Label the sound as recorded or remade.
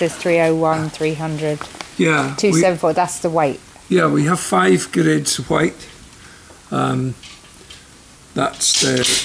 recorded